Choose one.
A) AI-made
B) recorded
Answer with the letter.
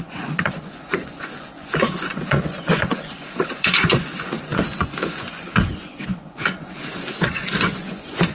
A